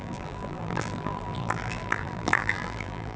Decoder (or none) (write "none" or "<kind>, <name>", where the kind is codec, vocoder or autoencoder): vocoder, BigVGAN v2